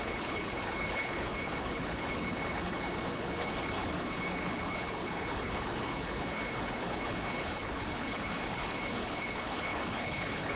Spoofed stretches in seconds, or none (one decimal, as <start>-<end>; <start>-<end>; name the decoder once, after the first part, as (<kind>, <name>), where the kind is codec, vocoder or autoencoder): 0.0-10.6 (codec, HILCodec)